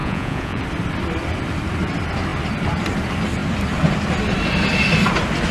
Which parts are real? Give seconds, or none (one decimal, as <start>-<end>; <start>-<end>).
0.6-5.5